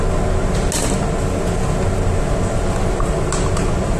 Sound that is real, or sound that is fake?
real